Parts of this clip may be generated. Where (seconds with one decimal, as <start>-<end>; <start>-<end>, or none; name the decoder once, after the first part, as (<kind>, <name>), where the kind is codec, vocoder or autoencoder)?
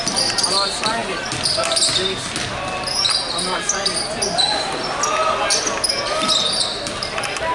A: none